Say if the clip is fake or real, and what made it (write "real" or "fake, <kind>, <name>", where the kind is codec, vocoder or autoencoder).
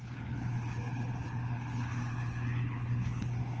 fake, codec, HILCodec